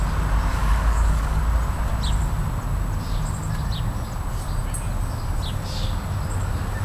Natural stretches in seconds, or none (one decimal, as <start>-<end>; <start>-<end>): 0.0-0.5; 1.4-6.8